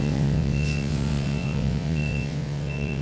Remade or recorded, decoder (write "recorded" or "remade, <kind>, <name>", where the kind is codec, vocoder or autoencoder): remade, vocoder, WaveNeXt